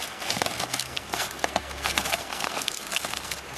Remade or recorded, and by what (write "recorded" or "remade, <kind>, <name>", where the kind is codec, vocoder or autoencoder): remade, codec, SNAC